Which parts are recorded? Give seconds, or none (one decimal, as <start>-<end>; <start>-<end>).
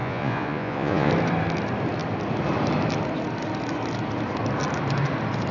1.1-5.5